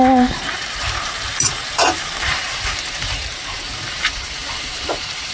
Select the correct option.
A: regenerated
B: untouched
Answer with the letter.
A